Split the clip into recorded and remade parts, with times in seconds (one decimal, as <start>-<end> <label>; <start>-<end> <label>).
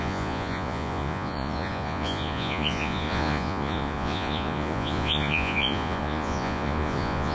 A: 0.0-7.3 remade